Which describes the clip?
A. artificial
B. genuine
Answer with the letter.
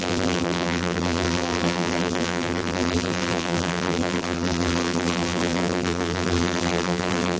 A